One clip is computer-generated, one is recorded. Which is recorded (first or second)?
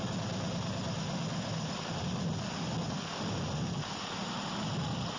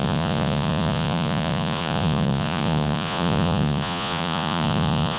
first